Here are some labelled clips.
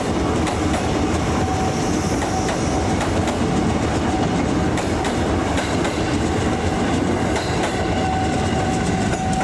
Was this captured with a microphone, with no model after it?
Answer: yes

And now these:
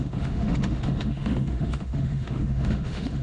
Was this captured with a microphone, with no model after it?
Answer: no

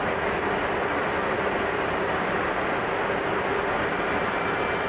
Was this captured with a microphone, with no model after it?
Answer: yes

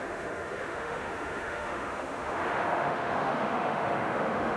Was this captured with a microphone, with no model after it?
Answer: no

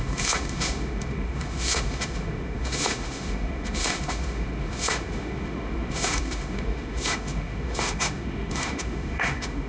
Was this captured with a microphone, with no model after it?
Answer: no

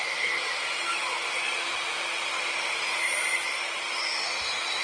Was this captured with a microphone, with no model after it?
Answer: yes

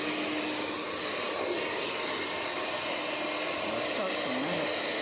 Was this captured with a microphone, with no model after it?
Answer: yes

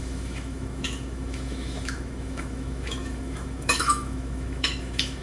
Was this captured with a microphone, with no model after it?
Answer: no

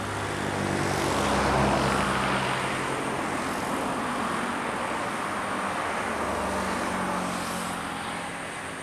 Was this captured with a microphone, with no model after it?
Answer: yes